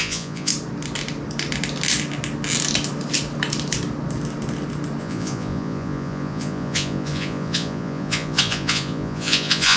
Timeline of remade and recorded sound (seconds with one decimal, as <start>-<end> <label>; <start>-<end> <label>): 0.0-0.5 remade; 0.5-5.0 recorded; 5.0-9.8 remade